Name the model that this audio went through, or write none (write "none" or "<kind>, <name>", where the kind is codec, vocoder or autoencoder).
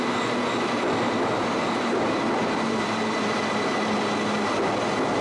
none